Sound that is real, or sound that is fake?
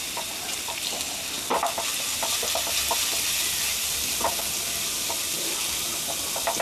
real